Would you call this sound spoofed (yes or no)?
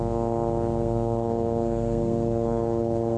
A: yes